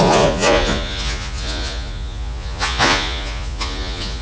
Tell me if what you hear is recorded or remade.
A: remade